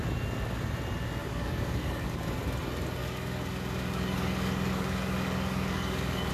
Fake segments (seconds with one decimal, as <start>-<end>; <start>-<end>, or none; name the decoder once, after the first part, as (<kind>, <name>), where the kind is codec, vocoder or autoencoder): 1.2-2.2 (codec, DAC); 3.0-6.3